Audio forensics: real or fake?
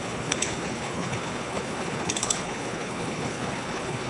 fake